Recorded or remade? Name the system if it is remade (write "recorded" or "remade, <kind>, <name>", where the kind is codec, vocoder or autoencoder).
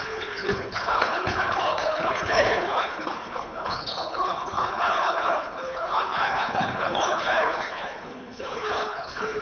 remade, codec, HILCodec